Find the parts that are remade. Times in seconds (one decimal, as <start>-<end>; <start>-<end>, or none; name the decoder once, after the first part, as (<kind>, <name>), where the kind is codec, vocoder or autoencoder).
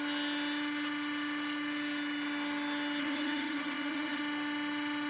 3.0-4.2 (vocoder, HiFi-GAN)